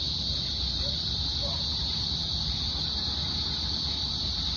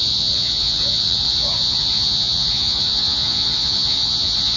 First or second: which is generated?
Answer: second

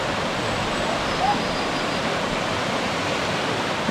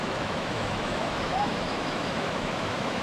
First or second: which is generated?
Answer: second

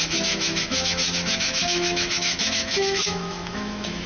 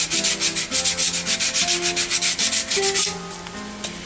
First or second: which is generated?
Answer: first